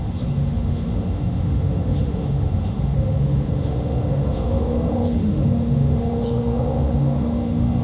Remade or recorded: remade